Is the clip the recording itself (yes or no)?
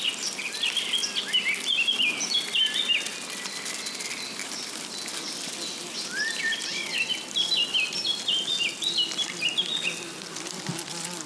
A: yes